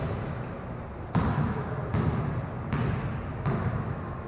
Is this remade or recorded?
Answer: recorded